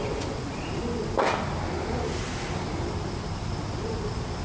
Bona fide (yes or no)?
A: yes